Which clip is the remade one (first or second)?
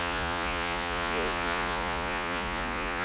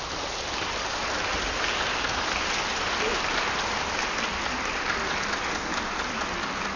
first